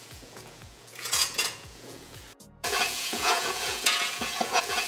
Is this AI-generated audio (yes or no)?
yes